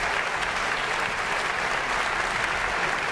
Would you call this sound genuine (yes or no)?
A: yes